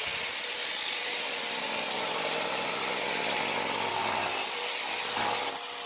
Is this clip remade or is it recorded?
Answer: recorded